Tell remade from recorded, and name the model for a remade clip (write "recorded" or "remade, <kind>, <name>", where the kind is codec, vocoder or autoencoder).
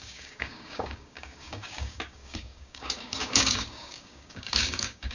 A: remade, codec, DAC